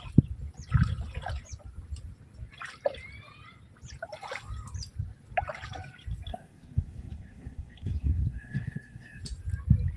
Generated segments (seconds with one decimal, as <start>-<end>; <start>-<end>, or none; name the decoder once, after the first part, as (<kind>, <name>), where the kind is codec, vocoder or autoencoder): 6.3-9.2 (codec, SNAC)